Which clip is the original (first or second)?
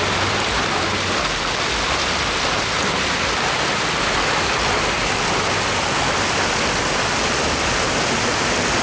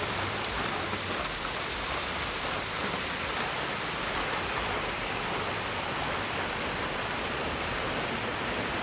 first